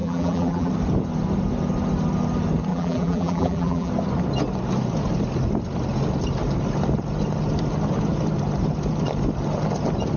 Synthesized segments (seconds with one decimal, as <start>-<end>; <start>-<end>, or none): 0.0-0.7; 2.7-3.9